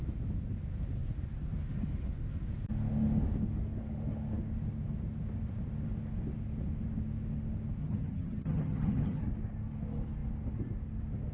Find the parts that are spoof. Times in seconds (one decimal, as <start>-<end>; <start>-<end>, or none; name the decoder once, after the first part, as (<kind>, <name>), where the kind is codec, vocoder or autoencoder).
7.8-9.2 (vocoder, HiFi-GAN)